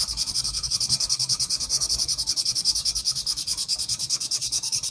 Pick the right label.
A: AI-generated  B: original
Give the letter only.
A